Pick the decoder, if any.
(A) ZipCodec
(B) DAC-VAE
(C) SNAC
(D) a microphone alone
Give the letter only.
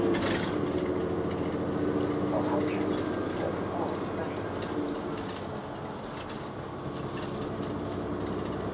D